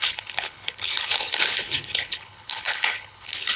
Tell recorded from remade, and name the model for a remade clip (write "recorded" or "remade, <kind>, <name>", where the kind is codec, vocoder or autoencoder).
remade, codec, HILCodec